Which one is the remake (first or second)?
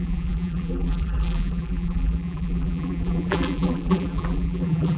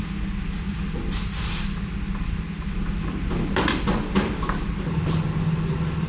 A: first